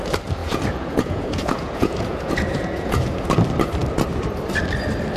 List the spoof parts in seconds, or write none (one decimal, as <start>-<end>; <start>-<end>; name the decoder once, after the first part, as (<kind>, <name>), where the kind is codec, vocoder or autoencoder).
0.4-3.3 (vocoder, Vocos)